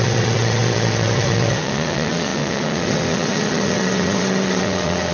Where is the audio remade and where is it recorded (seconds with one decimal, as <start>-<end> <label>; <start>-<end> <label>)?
0.0-5.1 remade

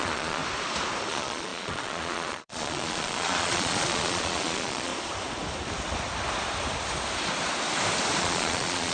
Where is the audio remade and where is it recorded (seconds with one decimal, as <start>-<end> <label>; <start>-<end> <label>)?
0.0-0.4 remade; 0.4-1.1 recorded; 1.1-4.9 remade; 4.9-8.2 recorded; 8.2-8.9 remade